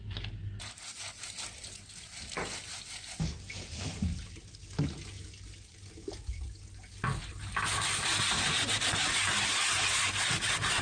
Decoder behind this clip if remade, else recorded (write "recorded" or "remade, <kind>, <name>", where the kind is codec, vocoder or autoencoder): recorded